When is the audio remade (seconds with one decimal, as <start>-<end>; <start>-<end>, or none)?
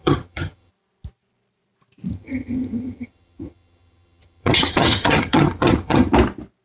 0.0-0.7; 2.1-6.1